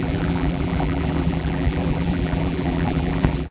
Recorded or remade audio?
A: remade